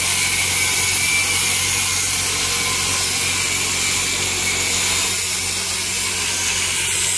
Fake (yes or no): no